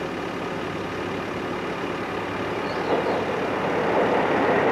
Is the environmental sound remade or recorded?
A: recorded